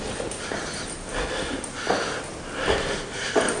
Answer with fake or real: real